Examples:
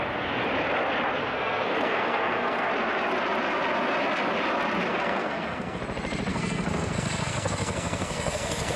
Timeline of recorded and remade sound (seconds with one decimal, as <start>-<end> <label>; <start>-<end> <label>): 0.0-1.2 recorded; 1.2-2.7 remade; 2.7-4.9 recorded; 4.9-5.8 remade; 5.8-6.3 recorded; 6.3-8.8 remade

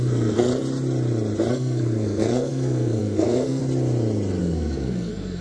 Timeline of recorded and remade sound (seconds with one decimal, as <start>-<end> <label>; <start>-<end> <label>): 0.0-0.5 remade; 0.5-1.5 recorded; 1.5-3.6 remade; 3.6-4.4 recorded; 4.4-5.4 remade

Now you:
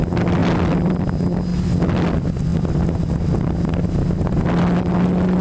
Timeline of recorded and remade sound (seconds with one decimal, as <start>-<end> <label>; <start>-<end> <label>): 0.0-2.5 recorded; 2.5-4.4 remade; 4.4-5.4 recorded